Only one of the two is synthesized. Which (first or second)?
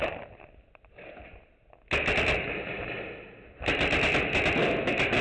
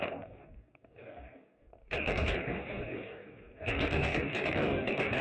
second